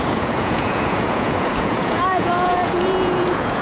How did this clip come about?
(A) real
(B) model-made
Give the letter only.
B